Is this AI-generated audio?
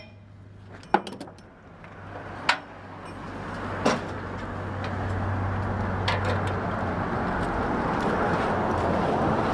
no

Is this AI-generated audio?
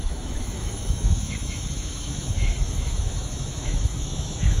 yes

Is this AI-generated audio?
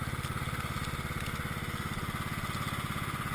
no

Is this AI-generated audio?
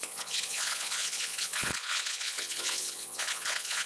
yes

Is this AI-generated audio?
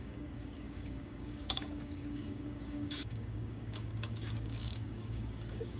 yes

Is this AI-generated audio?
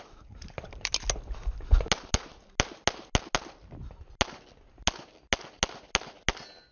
no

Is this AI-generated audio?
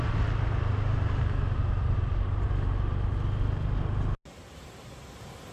no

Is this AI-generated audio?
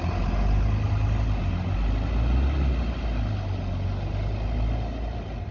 no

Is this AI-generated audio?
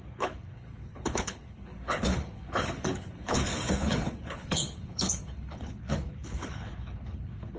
yes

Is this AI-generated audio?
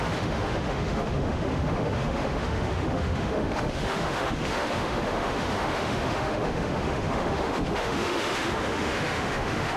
yes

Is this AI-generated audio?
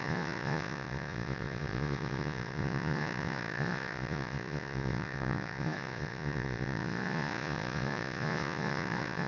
yes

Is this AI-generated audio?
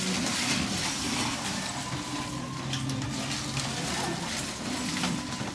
no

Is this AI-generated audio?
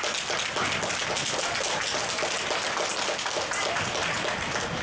no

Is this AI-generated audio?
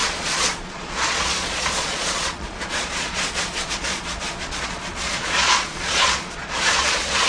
yes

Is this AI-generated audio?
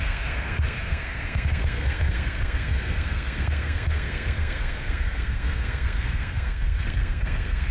yes